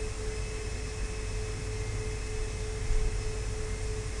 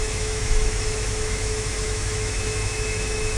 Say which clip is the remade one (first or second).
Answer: second